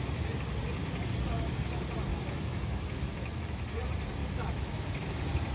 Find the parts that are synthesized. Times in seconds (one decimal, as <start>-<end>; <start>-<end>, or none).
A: 2.1-3.8; 4.2-5.0